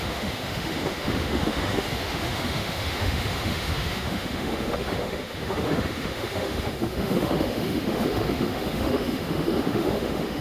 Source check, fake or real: fake